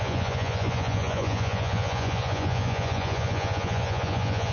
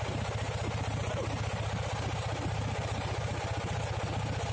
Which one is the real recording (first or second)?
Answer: second